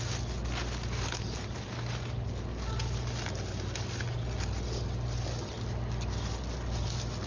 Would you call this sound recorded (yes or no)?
yes